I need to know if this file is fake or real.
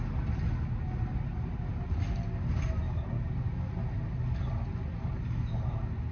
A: real